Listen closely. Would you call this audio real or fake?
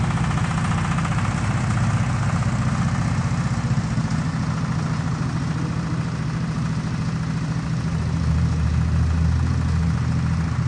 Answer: real